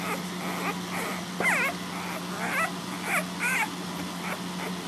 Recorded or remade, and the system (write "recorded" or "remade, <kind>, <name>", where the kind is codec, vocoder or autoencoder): recorded